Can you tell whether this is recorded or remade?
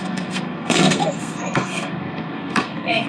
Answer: remade